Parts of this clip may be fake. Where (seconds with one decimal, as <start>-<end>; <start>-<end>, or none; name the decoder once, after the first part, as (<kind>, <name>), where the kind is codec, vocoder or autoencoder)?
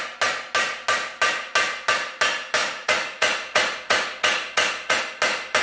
2.6-5.0 (vocoder, Vocos)